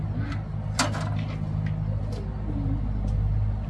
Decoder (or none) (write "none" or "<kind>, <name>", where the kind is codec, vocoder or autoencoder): none